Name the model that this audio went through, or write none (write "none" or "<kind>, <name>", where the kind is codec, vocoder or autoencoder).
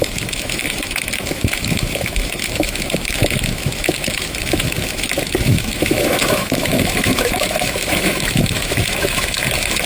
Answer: autoencoder, DAC-VAE